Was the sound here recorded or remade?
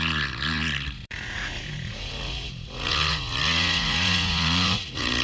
remade